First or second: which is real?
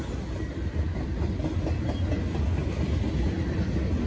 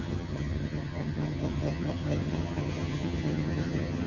first